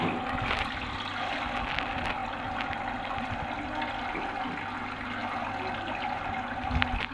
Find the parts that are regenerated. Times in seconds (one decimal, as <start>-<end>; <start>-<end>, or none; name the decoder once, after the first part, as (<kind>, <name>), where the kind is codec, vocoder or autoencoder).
none